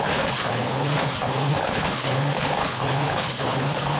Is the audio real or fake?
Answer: fake